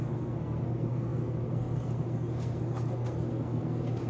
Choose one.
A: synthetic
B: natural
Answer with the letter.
A